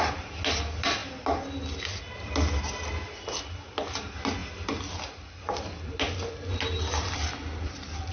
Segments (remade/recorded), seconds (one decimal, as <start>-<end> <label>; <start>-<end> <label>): 0.0-8.1 recorded